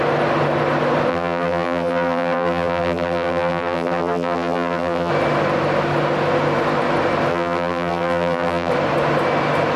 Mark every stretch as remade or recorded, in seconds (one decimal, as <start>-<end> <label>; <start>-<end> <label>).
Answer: 0.0-1.1 recorded; 1.1-5.1 remade; 5.1-7.3 recorded; 7.3-8.7 remade; 8.7-9.8 recorded